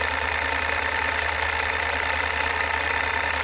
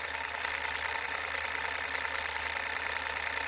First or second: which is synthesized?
first